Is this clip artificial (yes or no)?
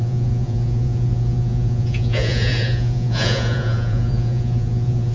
yes